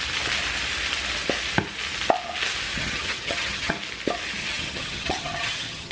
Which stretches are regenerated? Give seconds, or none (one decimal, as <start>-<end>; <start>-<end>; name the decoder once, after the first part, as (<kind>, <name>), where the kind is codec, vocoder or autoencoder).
2.7-3.7 (vocoder, HiFi-GAN); 4.4-5.9